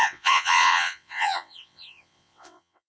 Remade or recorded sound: remade